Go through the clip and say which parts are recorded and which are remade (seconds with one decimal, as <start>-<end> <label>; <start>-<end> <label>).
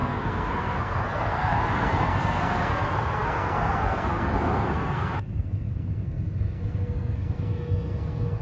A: 0.0-8.4 remade